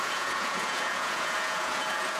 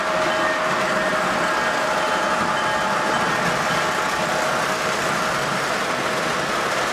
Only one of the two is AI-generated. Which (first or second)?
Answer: first